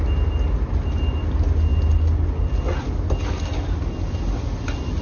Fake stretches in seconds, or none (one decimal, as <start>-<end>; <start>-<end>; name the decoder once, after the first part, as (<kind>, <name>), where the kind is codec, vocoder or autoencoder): none